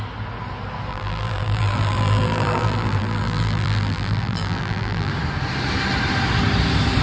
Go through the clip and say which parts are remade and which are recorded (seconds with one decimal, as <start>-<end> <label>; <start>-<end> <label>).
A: 0.0-0.9 recorded; 0.9-5.1 remade; 5.1-7.0 recorded